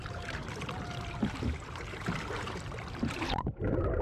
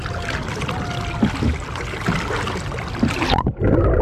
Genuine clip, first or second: second